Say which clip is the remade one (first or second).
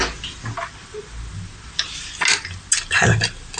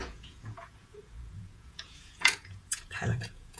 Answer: second